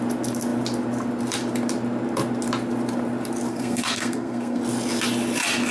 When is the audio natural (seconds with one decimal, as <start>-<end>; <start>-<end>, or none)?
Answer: 0.0-3.5; 4.6-5.7